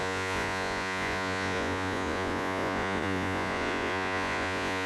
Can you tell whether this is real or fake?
fake